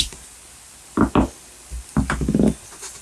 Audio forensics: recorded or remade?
recorded